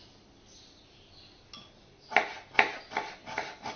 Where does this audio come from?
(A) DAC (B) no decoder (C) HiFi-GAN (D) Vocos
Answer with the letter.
B